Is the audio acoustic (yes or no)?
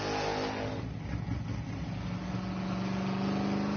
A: yes